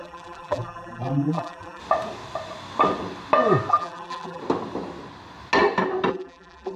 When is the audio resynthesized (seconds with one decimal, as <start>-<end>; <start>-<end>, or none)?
0.0-1.8; 3.7-4.4; 6.1-6.8